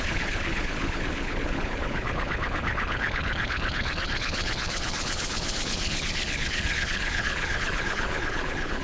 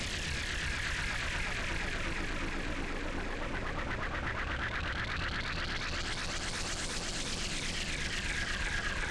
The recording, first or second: second